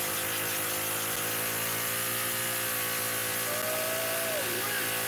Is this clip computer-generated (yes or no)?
no